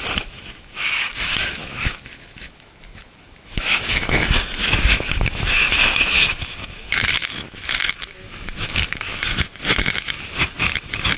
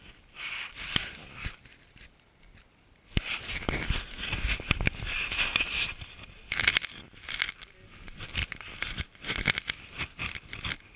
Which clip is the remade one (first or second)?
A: first